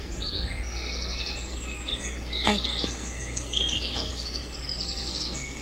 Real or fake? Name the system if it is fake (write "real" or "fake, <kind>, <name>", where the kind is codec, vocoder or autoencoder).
fake, codec, SNAC